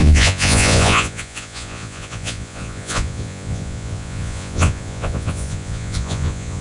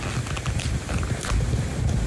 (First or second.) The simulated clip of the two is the first